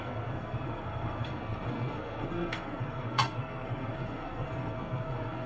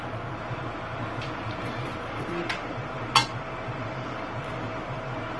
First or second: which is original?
second